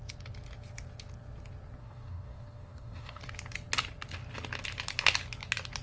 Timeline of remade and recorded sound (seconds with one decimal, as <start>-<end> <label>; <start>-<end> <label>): 0.0-1.8 recorded; 1.8-3.2 remade; 3.2-5.8 recorded